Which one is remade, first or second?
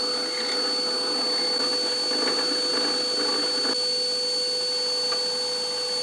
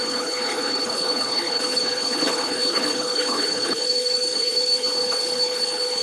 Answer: second